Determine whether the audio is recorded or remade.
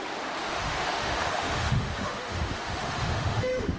remade